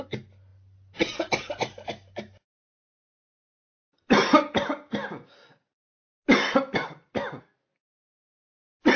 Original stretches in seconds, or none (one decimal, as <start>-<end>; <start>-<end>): 0.0-9.0